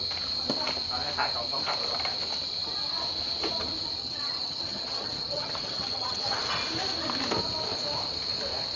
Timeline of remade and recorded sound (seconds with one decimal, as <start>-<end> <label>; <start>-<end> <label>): 0.0-4.0 recorded; 4.0-6.4 remade; 6.4-8.8 recorded